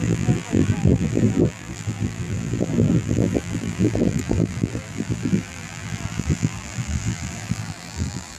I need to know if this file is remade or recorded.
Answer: remade